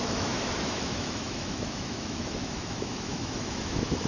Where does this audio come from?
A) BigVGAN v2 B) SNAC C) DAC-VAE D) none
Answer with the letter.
C